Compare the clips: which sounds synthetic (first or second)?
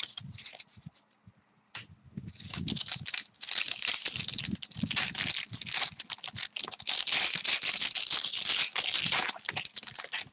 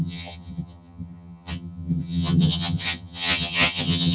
second